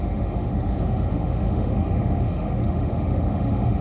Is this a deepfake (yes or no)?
yes